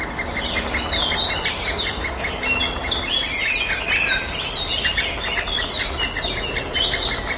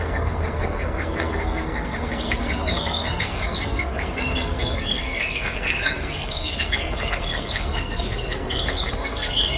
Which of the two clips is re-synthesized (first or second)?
second